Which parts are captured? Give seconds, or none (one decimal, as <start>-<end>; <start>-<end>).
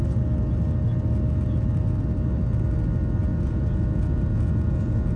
0.0-3.3